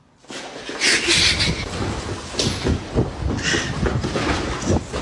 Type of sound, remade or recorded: recorded